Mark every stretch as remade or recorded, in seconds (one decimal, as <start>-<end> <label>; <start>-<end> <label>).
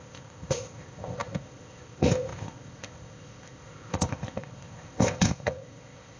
0.0-6.2 remade